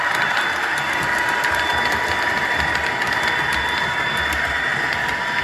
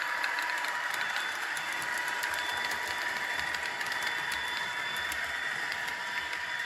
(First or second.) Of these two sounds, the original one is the first